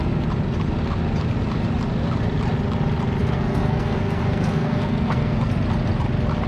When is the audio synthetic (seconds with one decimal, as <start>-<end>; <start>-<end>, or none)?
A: 3.2-5.5